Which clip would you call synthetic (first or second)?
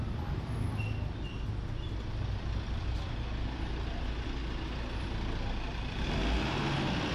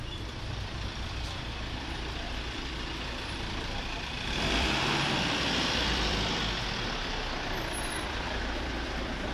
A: second